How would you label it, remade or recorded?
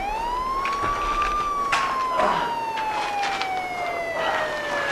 recorded